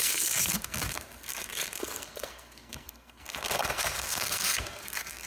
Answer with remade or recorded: remade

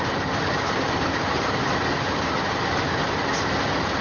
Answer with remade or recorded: recorded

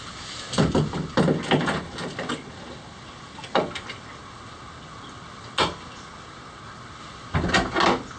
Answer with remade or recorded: recorded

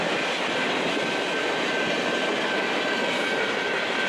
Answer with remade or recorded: recorded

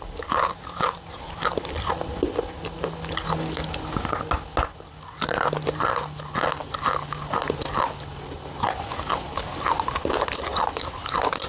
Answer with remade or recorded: recorded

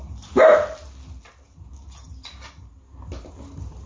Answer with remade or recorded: recorded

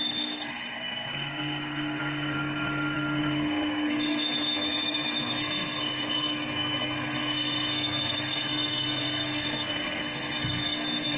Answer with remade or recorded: remade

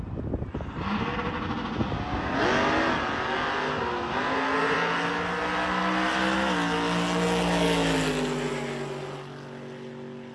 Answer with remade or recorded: recorded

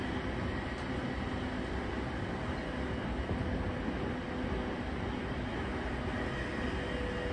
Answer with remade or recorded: recorded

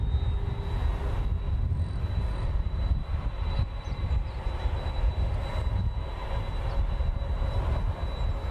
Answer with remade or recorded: recorded